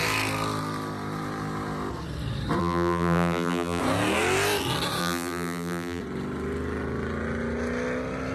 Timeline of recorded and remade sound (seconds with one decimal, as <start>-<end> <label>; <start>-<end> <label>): 0.0-2.6 recorded; 2.6-3.8 remade; 3.8-5.0 recorded; 5.0-6.0 remade; 6.0-8.3 recorded